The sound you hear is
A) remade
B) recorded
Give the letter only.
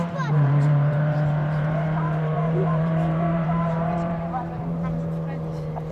A